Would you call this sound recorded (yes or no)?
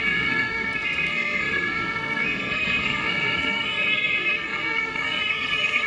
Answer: no